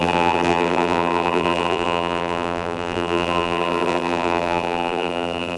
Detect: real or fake fake